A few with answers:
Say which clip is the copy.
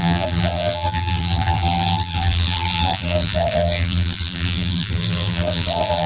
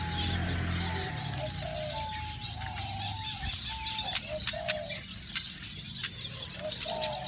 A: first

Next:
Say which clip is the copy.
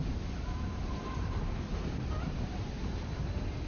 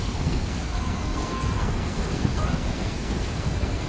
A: second